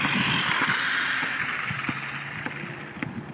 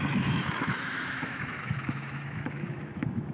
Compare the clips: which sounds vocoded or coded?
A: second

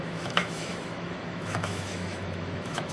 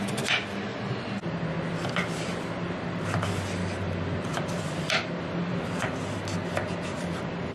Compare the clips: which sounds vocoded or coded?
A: first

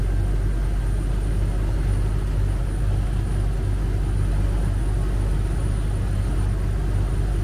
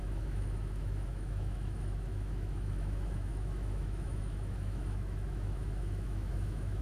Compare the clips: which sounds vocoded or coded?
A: second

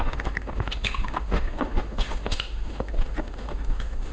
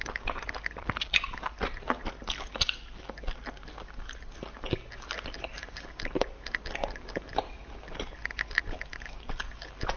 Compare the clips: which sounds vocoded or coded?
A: first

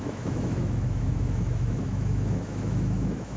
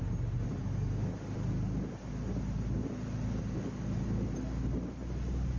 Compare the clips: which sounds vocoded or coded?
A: first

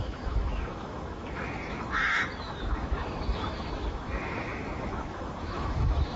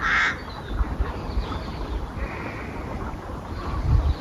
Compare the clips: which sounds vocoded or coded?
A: first